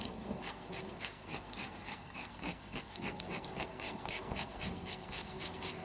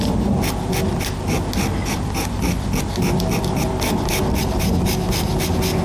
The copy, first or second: first